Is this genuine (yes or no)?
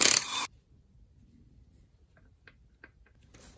yes